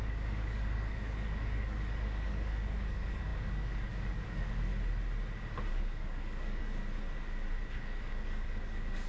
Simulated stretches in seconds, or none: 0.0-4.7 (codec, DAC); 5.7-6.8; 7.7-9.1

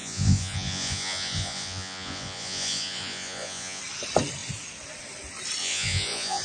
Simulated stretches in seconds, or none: 0.0-3.8 (vocoder, Vocos); 5.6-6.4

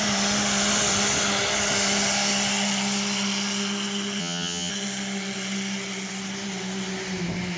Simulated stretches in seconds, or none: 4.2-4.7 (vocoder, HiFi-GAN)